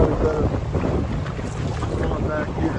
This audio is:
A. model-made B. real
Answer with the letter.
B